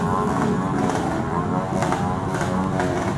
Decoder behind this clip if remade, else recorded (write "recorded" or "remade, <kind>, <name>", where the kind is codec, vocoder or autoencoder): recorded